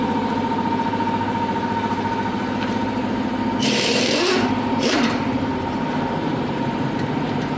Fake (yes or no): yes